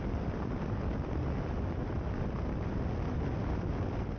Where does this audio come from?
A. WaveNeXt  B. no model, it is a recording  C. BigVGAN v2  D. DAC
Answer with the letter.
B